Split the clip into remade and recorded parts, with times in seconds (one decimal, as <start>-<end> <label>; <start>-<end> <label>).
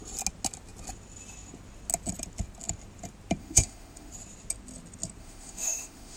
0.0-3.4 recorded; 3.4-4.1 remade; 4.1-5.2 recorded; 5.2-6.2 remade